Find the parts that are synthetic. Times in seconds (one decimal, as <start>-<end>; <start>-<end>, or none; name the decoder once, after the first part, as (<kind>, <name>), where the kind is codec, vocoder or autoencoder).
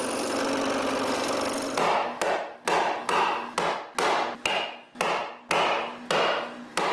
none